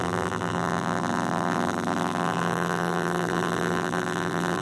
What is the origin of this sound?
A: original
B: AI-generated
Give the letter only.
B